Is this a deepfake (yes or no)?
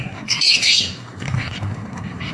yes